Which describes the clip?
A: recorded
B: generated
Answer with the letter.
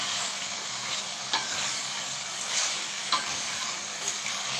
B